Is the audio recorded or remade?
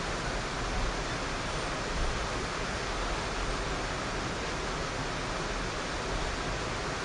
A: recorded